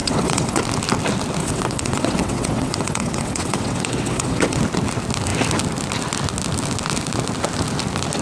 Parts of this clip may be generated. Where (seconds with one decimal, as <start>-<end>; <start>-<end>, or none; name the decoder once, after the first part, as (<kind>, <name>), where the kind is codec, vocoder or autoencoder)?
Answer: 0.0-0.6 (vocoder, WaveNeXt); 1.4-4.6